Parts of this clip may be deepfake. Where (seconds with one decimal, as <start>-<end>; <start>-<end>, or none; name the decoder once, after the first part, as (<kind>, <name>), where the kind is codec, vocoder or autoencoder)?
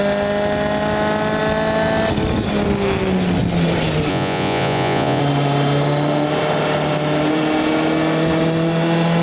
4.1-5.2 (vocoder, Vocos)